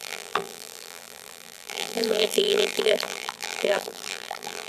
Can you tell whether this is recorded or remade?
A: remade